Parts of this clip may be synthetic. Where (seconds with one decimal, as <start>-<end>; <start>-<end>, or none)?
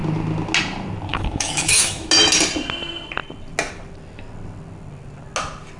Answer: 1.1-2.1